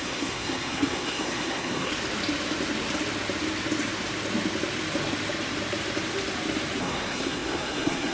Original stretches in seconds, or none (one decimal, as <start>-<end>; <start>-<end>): 1.9-6.8